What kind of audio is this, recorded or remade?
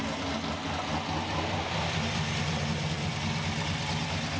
recorded